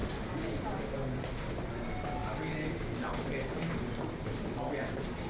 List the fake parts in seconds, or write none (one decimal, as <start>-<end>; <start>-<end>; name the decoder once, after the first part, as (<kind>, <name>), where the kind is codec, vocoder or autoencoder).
none

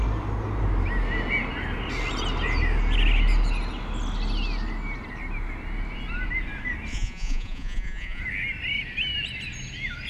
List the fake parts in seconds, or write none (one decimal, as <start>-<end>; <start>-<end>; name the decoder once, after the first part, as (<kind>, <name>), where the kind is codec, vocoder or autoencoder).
6.9-8.2 (vocoder, Vocos)

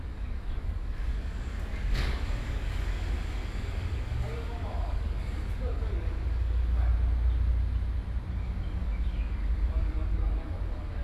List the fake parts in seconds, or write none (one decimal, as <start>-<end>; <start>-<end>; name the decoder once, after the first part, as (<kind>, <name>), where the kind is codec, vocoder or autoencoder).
0.0-6.9 (codec, DAC); 8.3-11.0

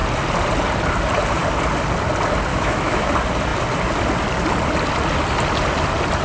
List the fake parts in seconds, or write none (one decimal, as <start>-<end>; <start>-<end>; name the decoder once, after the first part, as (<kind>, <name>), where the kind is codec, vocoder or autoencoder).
2.5-3.1 (autoencoder, DAC-VAE)

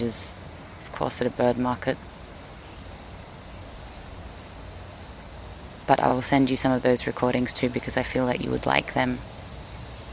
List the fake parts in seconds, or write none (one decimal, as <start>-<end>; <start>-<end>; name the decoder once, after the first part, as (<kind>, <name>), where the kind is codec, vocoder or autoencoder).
none

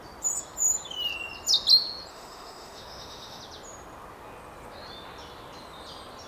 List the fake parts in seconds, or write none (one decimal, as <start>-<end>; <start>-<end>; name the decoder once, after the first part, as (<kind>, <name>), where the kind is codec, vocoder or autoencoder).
2.1-3.4 (autoencoder, DAC-VAE)

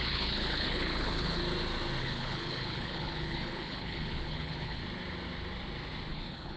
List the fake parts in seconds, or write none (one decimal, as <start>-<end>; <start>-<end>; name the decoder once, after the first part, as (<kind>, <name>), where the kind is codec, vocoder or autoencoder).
0.0-1.4 (codec, HILCodec); 2.0-4.8; 6.1-6.6

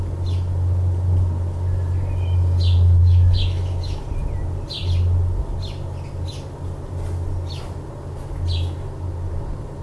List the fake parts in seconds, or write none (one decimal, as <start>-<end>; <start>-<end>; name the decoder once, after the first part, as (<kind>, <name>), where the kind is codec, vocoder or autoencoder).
3.0-4.0 (autoencoder, DAC-VAE)